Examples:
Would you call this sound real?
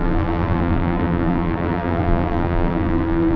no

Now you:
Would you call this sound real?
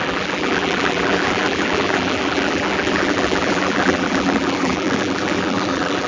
no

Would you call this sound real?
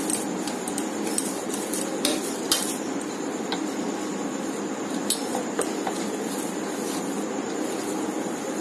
no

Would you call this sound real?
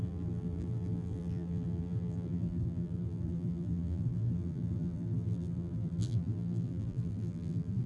no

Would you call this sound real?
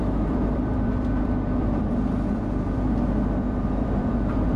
no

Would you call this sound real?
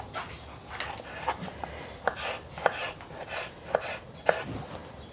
yes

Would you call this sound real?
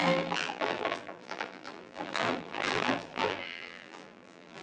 no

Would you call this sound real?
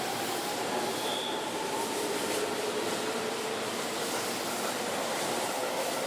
no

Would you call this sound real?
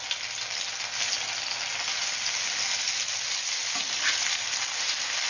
yes